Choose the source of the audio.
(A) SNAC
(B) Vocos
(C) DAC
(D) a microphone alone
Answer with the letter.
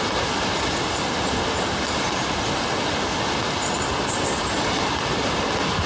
D